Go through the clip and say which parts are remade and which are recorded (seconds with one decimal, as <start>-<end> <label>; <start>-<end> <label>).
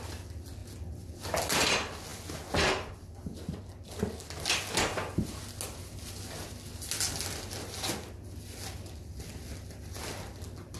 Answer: 0.0-10.8 recorded